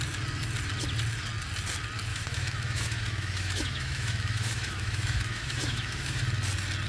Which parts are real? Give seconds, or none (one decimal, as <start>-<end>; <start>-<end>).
0.0-2.1; 6.2-6.9